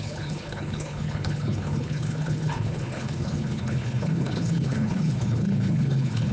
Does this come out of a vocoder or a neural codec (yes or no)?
yes